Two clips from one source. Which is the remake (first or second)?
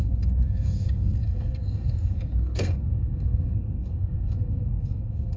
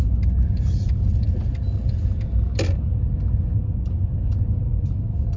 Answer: first